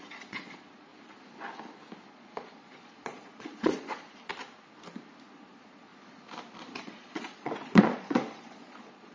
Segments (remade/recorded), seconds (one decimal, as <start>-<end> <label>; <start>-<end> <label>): 0.0-0.9 remade; 0.9-2.1 recorded; 2.1-4.3 remade; 4.3-5.3 recorded; 5.3-5.9 remade; 5.9-6.8 recorded; 6.8-9.1 remade